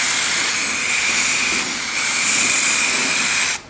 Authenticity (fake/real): real